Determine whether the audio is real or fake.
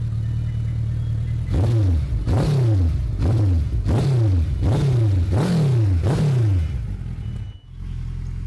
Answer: real